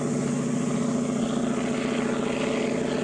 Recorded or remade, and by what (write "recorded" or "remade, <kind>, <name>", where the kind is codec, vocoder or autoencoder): recorded